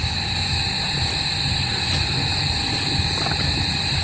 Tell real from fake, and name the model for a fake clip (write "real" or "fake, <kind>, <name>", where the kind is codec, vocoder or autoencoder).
real